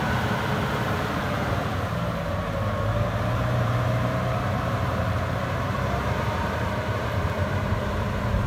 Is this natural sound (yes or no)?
no